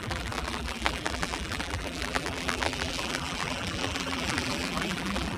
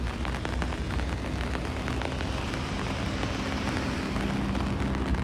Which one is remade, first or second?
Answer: first